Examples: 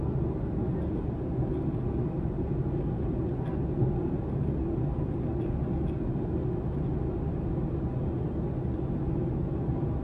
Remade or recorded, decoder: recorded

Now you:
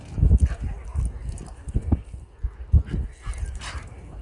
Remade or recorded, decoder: recorded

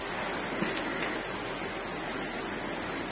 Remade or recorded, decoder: recorded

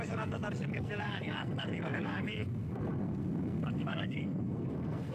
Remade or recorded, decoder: remade, codec, SNAC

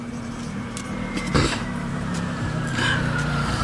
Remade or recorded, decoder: remade, vocoder, BigVGAN v2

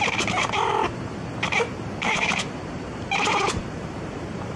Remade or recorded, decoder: remade, vocoder, BigVGAN v2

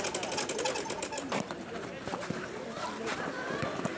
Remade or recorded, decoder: recorded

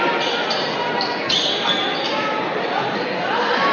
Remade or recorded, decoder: recorded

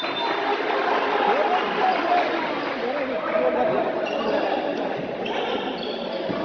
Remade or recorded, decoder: recorded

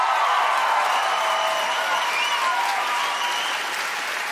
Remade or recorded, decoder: recorded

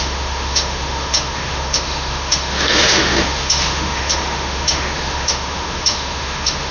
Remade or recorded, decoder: remade, autoencoder, DAC-VAE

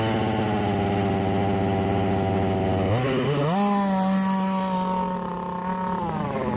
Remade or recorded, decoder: recorded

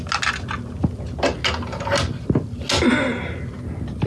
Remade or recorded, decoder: recorded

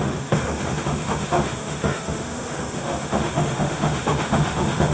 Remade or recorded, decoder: remade, autoencoder, DAC-VAE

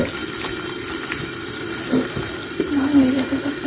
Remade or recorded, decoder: recorded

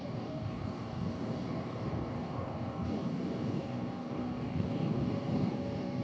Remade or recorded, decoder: remade, codec, DAC